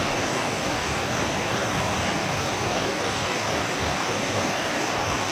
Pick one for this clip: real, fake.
fake